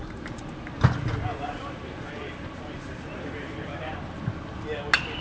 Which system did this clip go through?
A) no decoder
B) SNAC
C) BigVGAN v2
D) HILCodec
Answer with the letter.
A